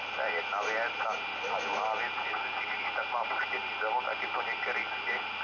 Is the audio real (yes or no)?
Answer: yes